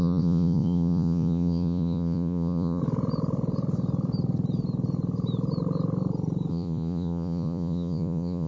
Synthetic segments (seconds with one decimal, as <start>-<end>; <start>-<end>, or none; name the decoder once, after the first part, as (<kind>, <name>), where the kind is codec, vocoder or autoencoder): 0.0-2.8 (vocoder, Vocos); 6.5-8.5